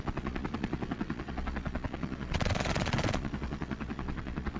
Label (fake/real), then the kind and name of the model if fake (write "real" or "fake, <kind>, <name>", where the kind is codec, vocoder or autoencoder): fake, vocoder, Vocos